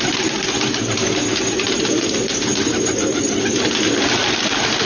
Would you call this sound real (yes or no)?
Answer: yes